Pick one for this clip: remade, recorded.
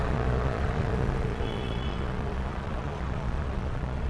remade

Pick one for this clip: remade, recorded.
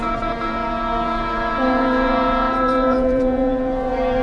remade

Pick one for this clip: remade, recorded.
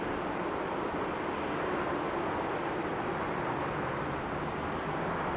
recorded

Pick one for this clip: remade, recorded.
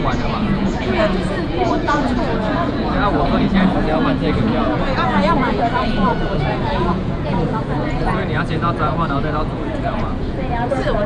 remade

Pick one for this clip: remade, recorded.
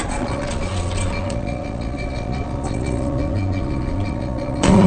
remade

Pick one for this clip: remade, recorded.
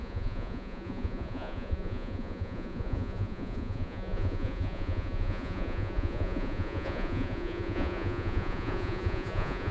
remade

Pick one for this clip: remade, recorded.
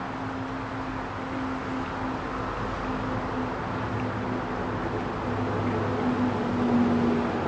recorded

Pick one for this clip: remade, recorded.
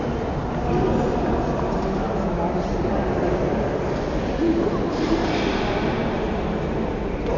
recorded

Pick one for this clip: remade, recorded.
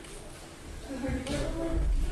recorded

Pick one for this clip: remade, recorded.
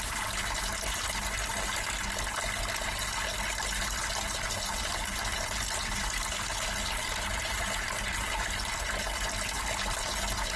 recorded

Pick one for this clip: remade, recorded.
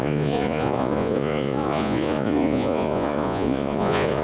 remade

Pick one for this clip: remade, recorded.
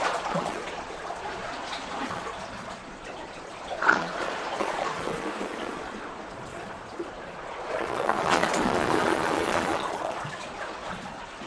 remade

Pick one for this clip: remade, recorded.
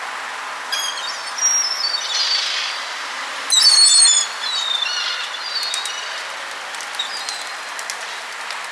recorded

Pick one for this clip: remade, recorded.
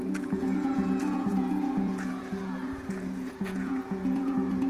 remade